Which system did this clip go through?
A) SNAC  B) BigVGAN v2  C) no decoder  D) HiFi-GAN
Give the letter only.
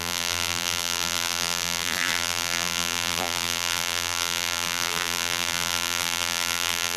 B